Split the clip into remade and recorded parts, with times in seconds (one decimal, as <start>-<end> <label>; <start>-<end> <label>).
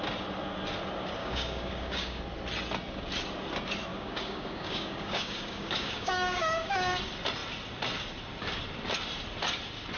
0.0-1.2 recorded; 1.2-2.2 remade; 2.2-3.9 recorded; 3.9-7.0 remade; 7.0-10.0 recorded